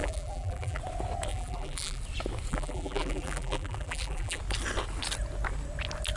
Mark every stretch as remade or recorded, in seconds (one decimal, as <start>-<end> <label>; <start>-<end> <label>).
0.0-0.8 remade; 0.8-1.3 recorded; 1.3-2.0 remade; 2.0-2.5 recorded; 2.5-4.4 remade; 4.4-6.2 recorded